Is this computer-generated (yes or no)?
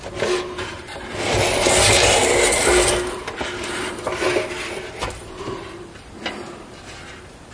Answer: no